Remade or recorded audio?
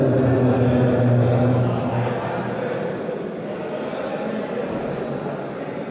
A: recorded